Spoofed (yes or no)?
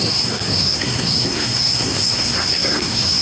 yes